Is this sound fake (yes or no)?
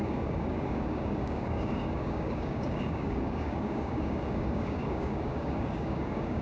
yes